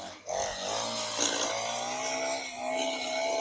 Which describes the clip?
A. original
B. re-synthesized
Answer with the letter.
A